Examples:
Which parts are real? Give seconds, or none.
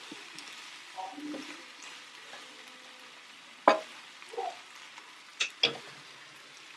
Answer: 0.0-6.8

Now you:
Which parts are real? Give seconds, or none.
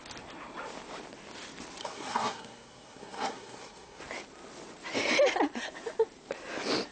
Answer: 0.0-1.8; 4.0-6.9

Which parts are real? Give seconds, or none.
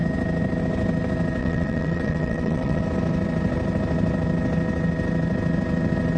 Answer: 0.0-1.4; 2.8-6.2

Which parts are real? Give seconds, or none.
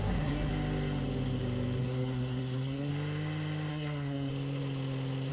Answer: 0.5-1.8; 2.9-3.7; 4.3-5.3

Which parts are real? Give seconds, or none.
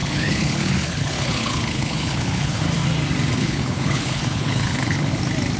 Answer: 2.6-3.4; 5.1-5.6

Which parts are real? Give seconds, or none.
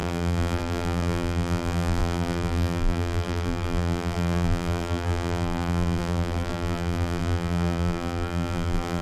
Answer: none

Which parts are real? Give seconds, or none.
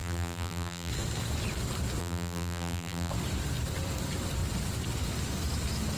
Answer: 0.9-2.0; 3.1-6.0